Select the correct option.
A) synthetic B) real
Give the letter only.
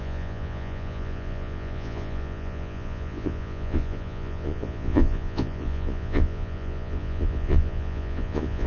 A